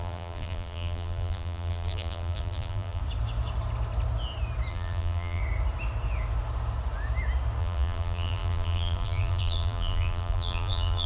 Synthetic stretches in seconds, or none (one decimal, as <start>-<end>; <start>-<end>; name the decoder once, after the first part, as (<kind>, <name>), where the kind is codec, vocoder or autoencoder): 0.0-3.0 (vocoder, BigVGAN v2); 4.7-5.4; 7.6-11.1